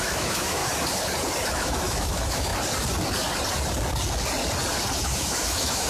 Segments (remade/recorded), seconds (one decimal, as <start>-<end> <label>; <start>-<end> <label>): 0.0-0.6 remade; 0.6-1.5 recorded; 1.5-2.5 remade; 2.5-4.9 recorded; 4.9-5.9 remade